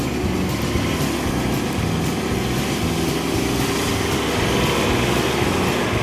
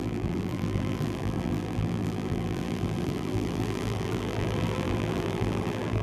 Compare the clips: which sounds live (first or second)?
first